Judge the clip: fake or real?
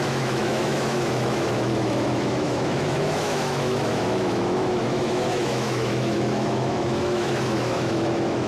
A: fake